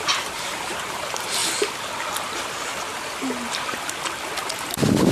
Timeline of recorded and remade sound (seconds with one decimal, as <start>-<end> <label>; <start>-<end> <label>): 0.0-1.4 remade; 1.4-4.5 recorded; 4.5-5.1 remade